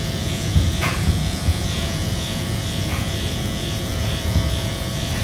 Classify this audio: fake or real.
fake